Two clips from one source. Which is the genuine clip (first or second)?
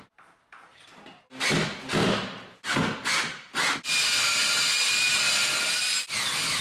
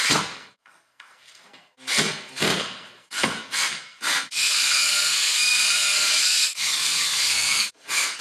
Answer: first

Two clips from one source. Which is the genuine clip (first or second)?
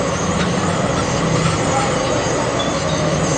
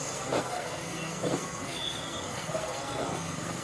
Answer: first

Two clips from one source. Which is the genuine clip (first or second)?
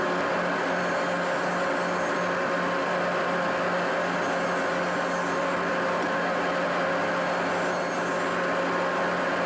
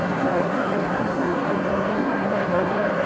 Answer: first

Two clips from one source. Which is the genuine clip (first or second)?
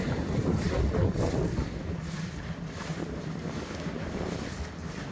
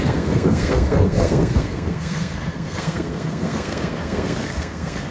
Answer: first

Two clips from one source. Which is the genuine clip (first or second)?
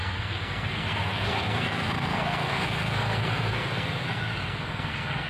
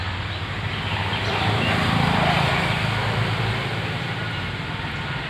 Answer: second